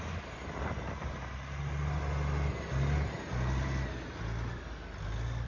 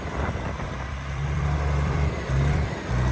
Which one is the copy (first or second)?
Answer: second